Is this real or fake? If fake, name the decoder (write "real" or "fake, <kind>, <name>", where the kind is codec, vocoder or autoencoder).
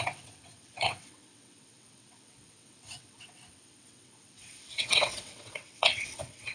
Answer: fake, vocoder, WaveNeXt